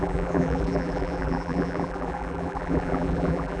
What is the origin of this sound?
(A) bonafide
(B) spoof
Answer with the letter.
B